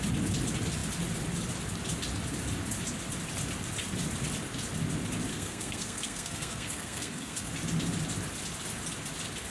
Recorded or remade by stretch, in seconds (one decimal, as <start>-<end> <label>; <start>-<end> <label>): 0.0-5.3 recorded; 5.3-7.5 remade; 7.5-9.5 recorded